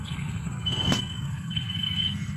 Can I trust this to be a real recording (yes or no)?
no